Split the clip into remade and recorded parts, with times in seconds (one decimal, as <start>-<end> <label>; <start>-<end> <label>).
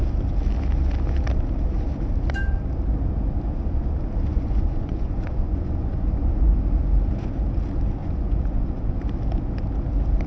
0.0-4.3 recorded; 4.3-6.6 remade; 6.6-8.0 recorded; 8.0-9.0 remade; 9.0-10.3 recorded